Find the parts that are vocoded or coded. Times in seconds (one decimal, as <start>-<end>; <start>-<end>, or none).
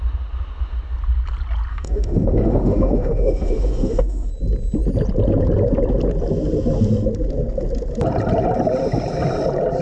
1.7-4.3